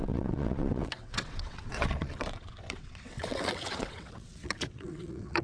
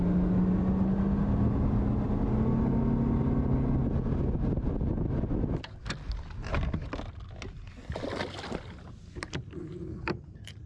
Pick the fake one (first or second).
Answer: first